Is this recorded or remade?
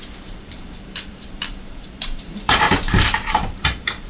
remade